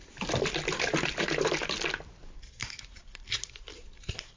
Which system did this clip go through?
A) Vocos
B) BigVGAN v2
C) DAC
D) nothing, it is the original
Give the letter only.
D